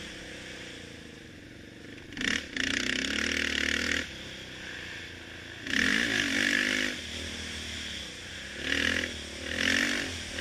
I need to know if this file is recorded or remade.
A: recorded